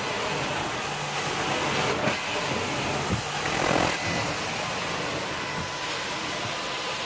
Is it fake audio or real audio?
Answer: real